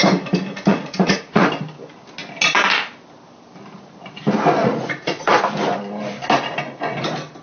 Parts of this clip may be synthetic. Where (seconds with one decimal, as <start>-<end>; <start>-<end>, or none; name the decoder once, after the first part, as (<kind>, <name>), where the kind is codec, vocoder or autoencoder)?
0.7-1.5 (vocoder, Vocos); 4.6-5.4